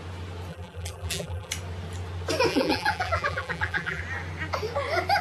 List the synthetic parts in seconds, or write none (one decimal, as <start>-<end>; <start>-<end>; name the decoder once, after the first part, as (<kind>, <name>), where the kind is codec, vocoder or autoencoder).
0.5-1.5 (vocoder, BigVGAN v2); 2.5-4.0